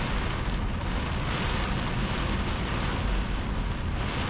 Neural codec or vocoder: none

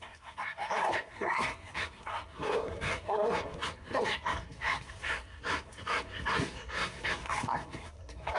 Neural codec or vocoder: codec, SNAC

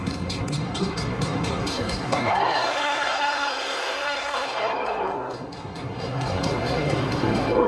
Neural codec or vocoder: codec, SNAC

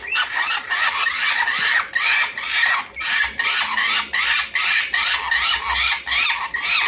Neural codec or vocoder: none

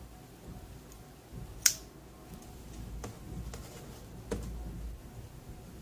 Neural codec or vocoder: none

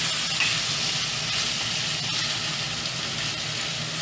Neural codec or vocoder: none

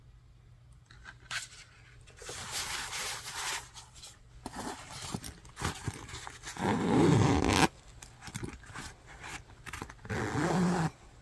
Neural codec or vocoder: none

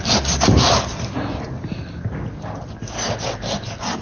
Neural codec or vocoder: none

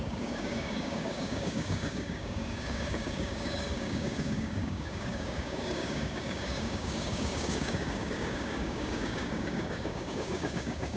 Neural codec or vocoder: codec, DAC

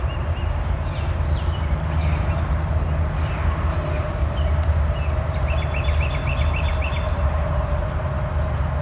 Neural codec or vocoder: none